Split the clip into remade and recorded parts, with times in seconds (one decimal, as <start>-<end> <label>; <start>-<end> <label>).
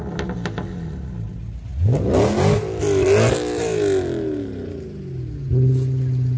0.0-6.4 recorded